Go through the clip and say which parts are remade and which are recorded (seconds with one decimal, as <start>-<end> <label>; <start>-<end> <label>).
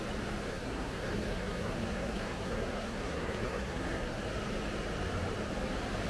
0.0-0.5 recorded; 0.5-4.2 remade; 4.2-6.1 recorded